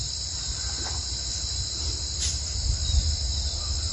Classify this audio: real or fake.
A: real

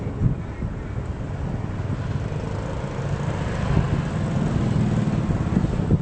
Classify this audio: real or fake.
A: real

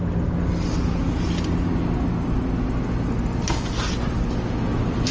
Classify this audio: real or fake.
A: real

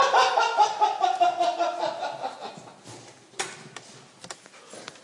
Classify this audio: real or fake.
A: real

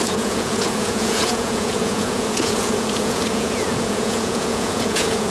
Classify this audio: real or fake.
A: fake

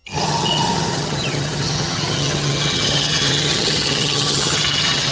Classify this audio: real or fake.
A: fake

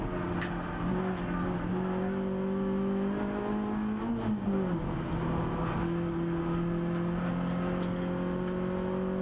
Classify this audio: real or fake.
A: real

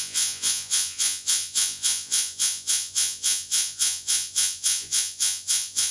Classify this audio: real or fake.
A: fake